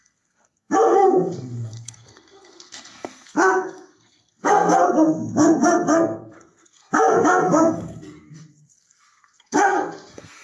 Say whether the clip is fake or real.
fake